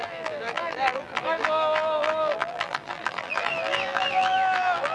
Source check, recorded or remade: remade